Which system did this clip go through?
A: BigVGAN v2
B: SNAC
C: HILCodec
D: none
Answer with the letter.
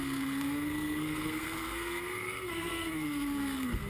B